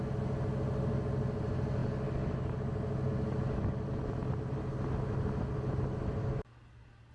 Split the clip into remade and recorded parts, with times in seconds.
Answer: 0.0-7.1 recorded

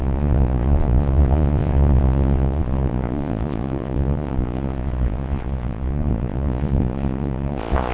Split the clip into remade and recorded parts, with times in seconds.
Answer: 0.0-7.9 remade

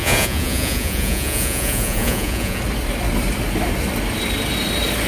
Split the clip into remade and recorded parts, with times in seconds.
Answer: 0.0-2.6 remade; 2.6-5.1 recorded